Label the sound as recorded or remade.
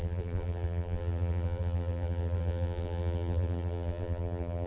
remade